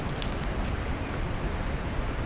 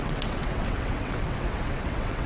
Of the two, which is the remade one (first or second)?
second